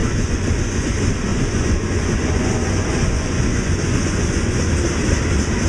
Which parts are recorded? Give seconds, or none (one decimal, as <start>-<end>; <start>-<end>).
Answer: 0.9-1.3; 4.7-5.7